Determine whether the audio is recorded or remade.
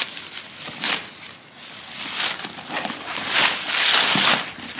recorded